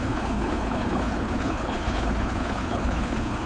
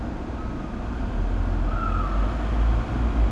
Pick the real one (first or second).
second